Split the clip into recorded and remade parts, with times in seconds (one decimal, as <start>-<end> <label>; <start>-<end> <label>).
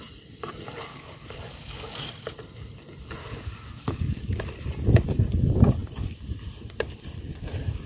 0.0-0.9 recorded; 0.9-2.1 remade; 2.1-3.2 recorded; 3.2-4.4 remade; 4.4-7.9 recorded